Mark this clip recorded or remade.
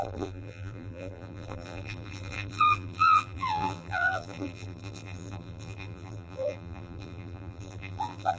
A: remade